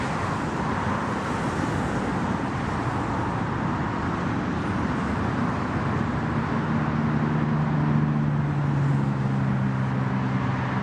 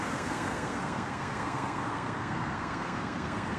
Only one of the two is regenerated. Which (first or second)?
second